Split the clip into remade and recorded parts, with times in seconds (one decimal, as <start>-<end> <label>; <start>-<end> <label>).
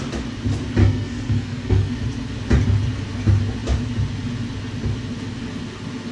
0.0-0.8 recorded; 0.8-1.9 remade; 1.9-6.1 recorded